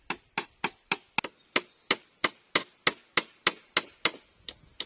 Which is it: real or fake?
real